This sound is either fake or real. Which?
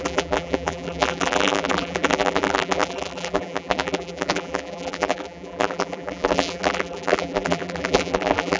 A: fake